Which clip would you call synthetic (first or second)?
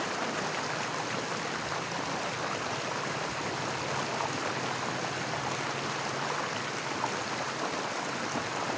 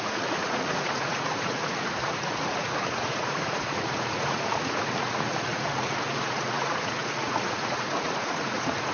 second